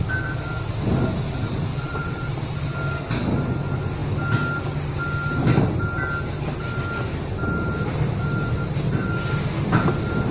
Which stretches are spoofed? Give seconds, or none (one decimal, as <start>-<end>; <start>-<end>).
1.7-2.3